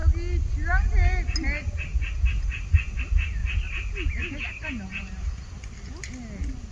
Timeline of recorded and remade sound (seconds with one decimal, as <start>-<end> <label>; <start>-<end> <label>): 0.0-4.9 recorded; 4.9-5.5 remade; 5.5-6.7 recorded

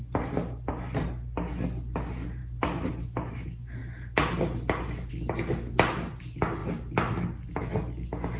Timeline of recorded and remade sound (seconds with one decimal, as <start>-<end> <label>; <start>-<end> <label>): 0.0-8.4 recorded

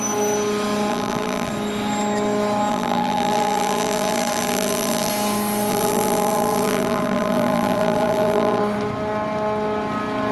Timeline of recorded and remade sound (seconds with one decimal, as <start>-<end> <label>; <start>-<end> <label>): 0.0-0.9 recorded; 0.9-1.5 remade; 1.5-2.7 recorded; 2.7-5.1 remade; 5.1-5.7 recorded; 5.7-8.6 remade; 8.6-10.3 recorded

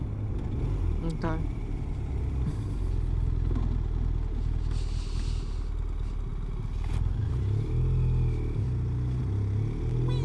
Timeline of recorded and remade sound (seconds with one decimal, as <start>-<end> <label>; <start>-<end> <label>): 0.0-10.2 recorded

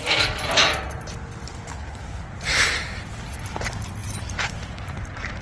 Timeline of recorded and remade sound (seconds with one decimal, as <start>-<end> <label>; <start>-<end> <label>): 0.0-4.0 recorded; 4.0-5.4 remade

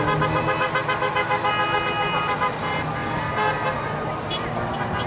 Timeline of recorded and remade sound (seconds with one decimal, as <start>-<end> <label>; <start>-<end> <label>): 0.0-5.1 recorded